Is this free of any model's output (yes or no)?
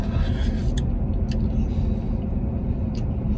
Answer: yes